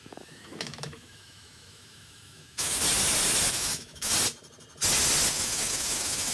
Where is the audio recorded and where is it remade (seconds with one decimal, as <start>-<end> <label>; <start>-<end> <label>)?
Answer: 0.0-2.8 remade; 2.8-3.5 recorded; 3.5-4.1 remade; 4.1-5.3 recorded; 5.3-6.3 remade